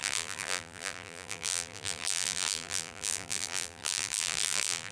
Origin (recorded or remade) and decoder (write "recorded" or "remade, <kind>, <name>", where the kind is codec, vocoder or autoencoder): remade, vocoder, BigVGAN v2